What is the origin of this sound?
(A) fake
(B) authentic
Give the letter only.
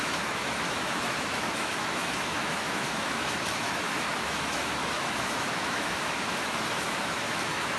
A